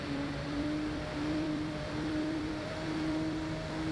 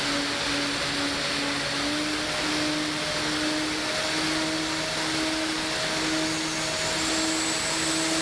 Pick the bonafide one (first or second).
second